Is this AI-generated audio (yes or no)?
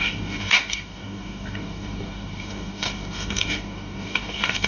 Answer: yes